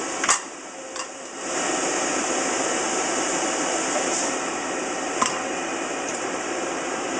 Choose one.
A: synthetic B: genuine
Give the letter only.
A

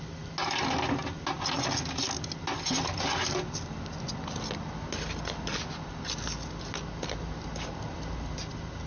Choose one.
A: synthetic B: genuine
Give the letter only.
B